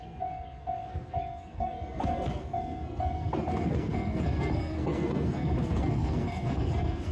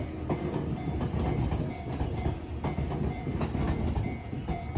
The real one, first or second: second